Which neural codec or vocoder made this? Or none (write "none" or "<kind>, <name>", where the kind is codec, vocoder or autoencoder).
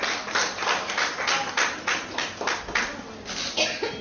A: none